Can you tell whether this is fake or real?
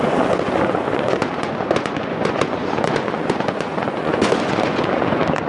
fake